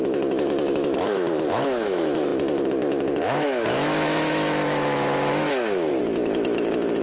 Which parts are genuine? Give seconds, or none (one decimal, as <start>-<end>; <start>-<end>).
none